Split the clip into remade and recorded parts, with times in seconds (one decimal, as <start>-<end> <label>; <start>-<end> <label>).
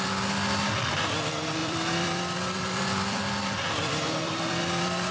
0.0-1.6 recorded; 1.6-5.1 remade